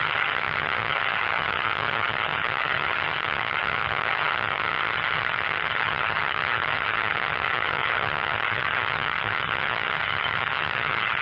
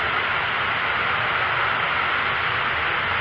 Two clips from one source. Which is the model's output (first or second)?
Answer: first